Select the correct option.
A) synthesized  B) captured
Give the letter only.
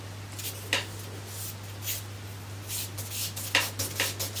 B